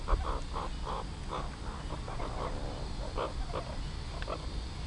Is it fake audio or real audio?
real